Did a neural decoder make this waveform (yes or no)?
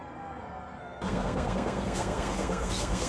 yes